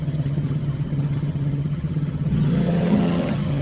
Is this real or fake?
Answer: fake